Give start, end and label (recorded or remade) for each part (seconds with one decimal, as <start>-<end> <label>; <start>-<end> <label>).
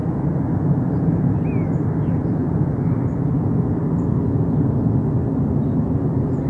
0.0-6.5 recorded